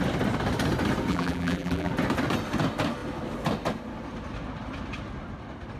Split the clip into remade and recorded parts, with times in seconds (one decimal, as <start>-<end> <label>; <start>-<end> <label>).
0.0-1.1 recorded; 1.1-1.9 remade; 1.9-5.8 recorded